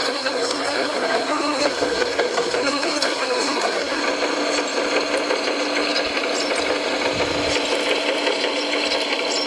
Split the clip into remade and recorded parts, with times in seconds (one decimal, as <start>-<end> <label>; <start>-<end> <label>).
0.0-4.0 remade; 4.0-9.5 recorded